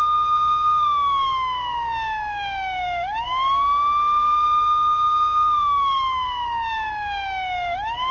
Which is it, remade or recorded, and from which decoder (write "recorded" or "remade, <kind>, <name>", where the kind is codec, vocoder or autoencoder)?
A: remade, codec, DAC